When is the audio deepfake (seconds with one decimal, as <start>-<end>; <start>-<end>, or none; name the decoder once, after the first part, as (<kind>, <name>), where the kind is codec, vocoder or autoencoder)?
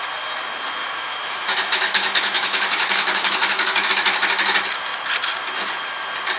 0.8-3.9 (autoencoder, DAC-VAE)